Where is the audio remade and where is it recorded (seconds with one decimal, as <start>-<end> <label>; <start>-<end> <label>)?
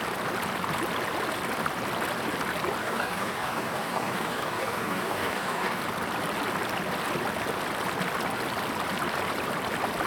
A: 0.0-2.8 recorded; 2.8-5.8 remade; 5.8-10.1 recorded